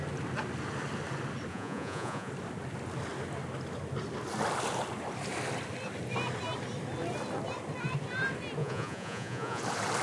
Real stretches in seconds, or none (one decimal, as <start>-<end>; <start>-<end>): 0.0-1.5; 2.3-8.6; 9.6-10.0